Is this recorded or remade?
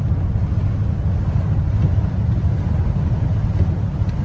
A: recorded